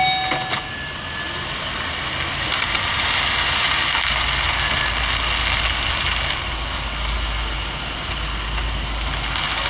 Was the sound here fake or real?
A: real